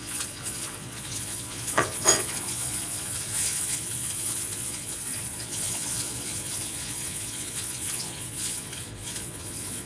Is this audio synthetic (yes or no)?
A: yes